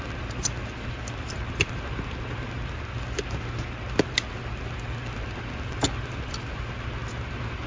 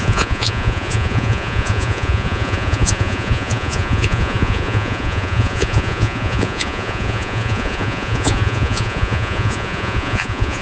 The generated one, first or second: second